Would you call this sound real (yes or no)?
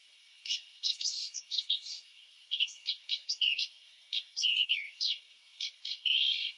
no